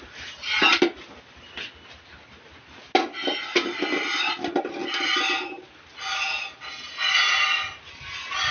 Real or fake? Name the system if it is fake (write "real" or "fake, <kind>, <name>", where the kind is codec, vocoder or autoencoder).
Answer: real